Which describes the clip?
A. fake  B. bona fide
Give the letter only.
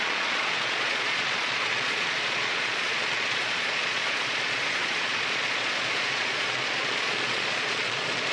A